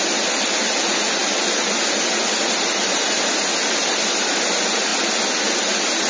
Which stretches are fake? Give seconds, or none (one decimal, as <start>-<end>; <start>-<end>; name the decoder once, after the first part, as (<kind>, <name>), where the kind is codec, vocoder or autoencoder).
none